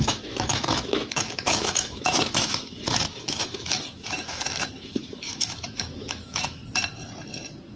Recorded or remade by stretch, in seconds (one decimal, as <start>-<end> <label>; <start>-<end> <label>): 0.0-6.6 remade; 6.6-7.8 recorded